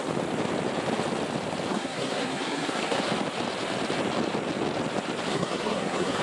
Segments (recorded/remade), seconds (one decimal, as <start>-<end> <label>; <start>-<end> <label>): 0.0-1.7 recorded; 1.7-3.0 remade; 3.0-5.3 recorded; 5.3-6.2 remade